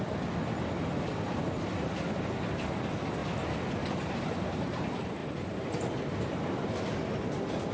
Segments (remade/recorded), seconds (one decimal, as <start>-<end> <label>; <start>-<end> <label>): 0.0-3.2 recorded; 3.2-3.9 remade; 3.9-5.2 recorded; 5.2-6.0 remade; 6.0-7.7 recorded